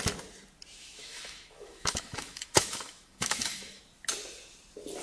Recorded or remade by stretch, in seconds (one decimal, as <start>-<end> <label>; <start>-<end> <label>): 0.0-0.8 recorded; 0.8-3.8 remade; 3.8-5.0 recorded